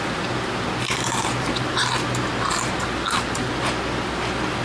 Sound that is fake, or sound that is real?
real